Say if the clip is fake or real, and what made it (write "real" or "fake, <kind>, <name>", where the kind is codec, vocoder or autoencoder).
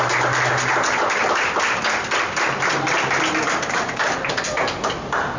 real